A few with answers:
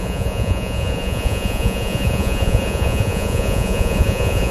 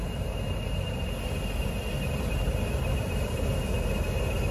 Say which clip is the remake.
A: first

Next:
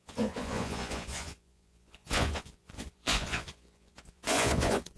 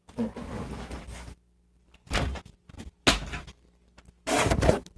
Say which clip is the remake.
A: first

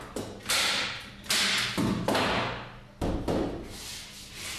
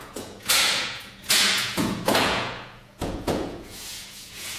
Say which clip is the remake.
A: second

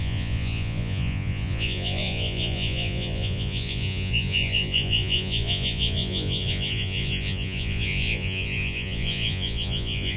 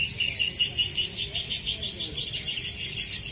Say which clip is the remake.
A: first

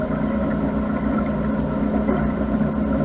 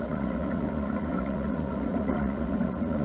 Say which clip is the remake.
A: second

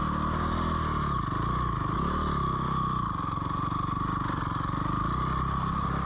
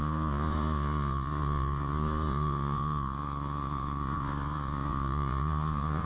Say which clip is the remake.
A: second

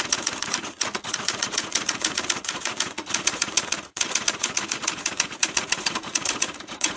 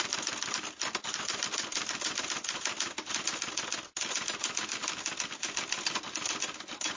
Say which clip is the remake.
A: first